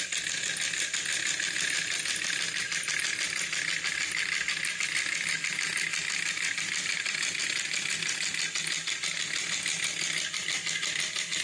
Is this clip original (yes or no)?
yes